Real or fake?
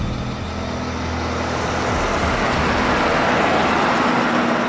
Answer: real